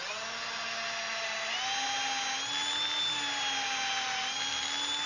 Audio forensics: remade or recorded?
recorded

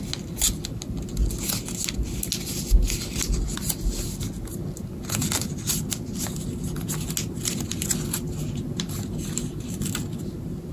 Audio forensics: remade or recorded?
recorded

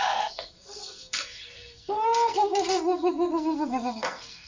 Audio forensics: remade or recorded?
remade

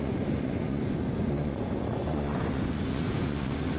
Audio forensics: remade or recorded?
remade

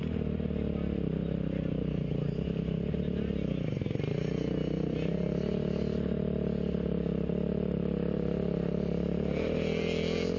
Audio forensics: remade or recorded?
recorded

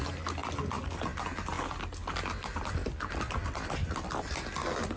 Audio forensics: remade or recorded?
recorded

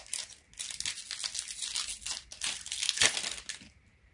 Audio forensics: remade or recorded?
recorded